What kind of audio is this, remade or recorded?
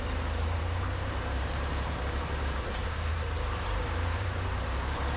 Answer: remade